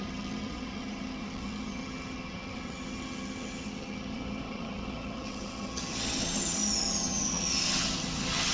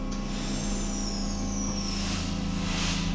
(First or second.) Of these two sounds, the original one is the second